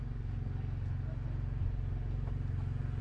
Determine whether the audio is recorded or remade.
recorded